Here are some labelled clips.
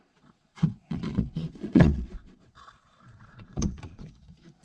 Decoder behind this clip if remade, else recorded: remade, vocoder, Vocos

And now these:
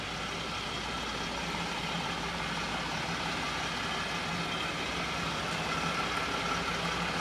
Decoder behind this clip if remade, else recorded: recorded